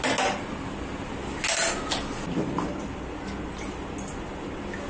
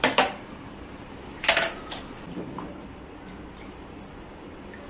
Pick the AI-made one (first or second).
second